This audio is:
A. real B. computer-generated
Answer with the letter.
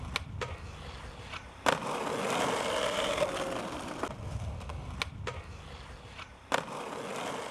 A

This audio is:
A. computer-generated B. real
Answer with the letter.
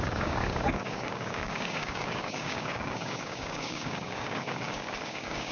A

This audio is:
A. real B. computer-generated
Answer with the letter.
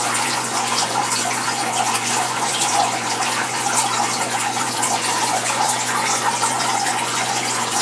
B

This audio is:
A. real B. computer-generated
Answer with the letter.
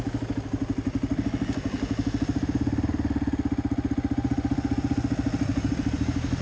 A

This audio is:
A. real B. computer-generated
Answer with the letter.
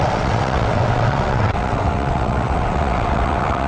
B